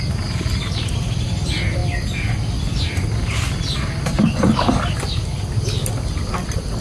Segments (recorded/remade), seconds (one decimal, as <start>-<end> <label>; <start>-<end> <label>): 0.0-6.8 recorded